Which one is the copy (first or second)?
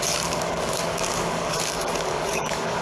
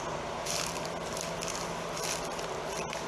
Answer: first